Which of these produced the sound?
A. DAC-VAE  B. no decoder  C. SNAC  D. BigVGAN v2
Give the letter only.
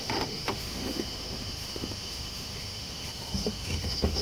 A